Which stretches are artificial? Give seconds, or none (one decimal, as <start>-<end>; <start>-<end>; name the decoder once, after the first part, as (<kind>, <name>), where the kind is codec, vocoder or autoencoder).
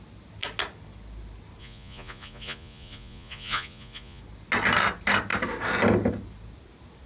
1.6-4.2 (vocoder, Vocos)